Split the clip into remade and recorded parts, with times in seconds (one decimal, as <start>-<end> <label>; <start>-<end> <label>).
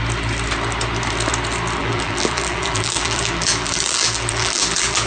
0.0-1.8 recorded; 1.8-5.1 remade